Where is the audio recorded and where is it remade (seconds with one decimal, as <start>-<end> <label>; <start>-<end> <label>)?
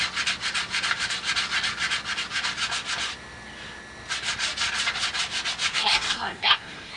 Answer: 0.0-5.7 recorded; 5.7-7.0 remade